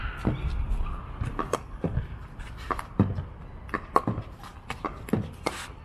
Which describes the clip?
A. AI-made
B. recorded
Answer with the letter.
B